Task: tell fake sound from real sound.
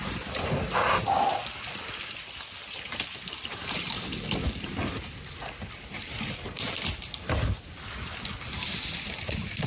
real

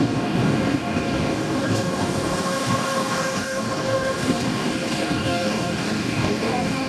fake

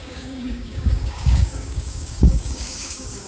fake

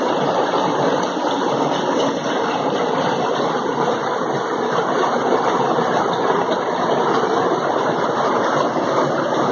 real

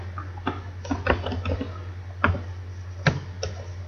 real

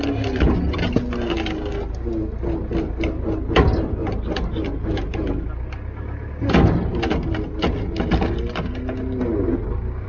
real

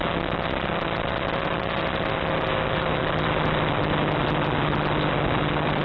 real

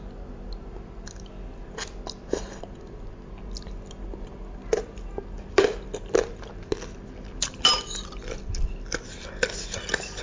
real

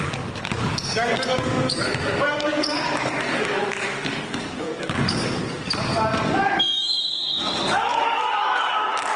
fake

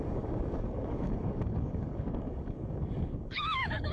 fake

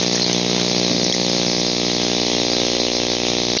real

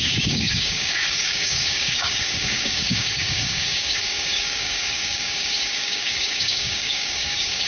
fake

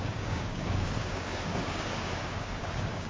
fake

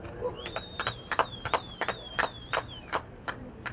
real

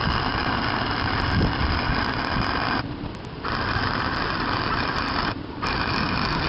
real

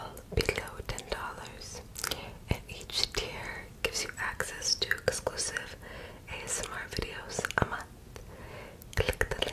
real